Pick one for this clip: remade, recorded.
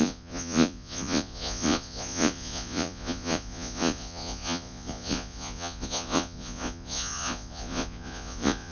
remade